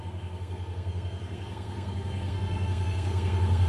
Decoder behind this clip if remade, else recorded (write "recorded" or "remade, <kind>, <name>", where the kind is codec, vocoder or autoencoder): remade, codec, SNAC